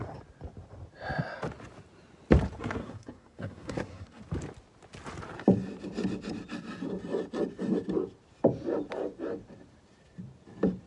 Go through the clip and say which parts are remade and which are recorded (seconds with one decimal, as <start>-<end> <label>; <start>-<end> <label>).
0.0-2.8 recorded; 2.8-4.2 remade; 4.2-10.9 recorded